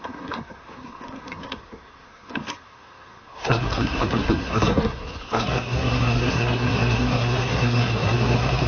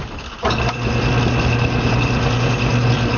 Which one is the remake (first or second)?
first